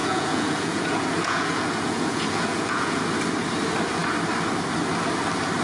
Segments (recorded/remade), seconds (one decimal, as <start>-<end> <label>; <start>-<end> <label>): 0.0-3.0 remade; 3.0-5.6 recorded